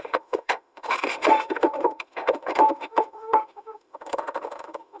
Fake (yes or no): yes